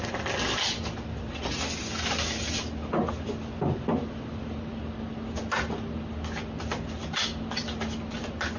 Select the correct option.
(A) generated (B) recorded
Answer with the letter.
B